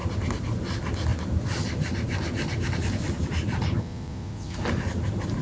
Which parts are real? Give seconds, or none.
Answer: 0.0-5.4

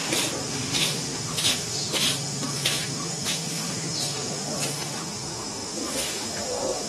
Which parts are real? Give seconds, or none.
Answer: 0.0-0.5

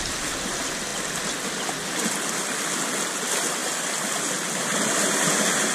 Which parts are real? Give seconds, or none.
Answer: 0.0-5.7

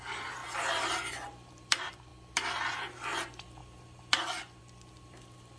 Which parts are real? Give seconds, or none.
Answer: 0.4-1.5; 2.1-2.7; 3.6-4.6

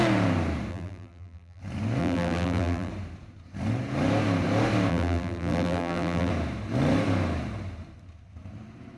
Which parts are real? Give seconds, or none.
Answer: 0.0-0.7; 1.6-2.0; 2.9-4.9; 6.3-9.0

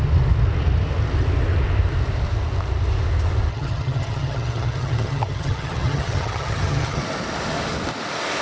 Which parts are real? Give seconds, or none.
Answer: 0.0-3.5; 7.0-8.4

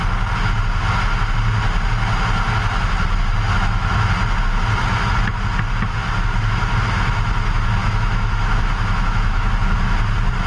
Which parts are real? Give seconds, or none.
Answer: 0.0-7.8; 9.5-10.5